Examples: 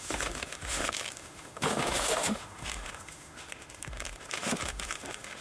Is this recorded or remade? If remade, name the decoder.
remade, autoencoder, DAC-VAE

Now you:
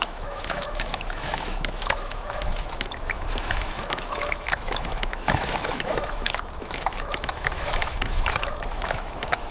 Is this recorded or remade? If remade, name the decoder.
remade, autoencoder, DAC-VAE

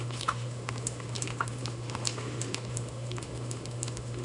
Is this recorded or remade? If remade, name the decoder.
remade, autoencoder, DAC-VAE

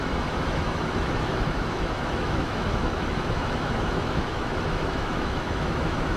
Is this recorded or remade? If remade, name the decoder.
remade, autoencoder, DAC-VAE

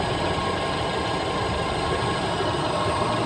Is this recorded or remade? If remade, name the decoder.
recorded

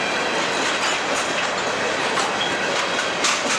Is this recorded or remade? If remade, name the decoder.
recorded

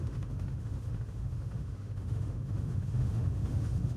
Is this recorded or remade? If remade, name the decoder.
remade, autoencoder, DAC-VAE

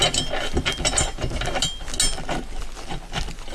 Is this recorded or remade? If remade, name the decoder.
recorded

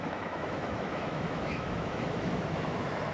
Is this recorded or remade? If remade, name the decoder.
remade, autoencoder, DAC-VAE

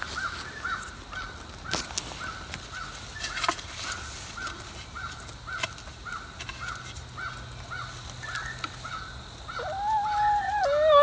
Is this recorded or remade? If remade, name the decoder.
recorded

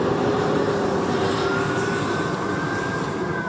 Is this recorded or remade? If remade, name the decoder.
recorded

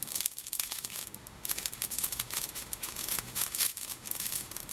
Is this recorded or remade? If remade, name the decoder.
remade, autoencoder, DAC-VAE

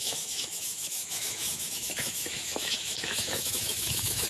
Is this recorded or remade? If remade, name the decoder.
remade, autoencoder, DAC-VAE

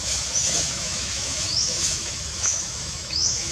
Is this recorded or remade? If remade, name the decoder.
remade, autoencoder, DAC-VAE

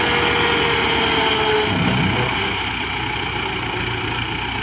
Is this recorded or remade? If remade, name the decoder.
recorded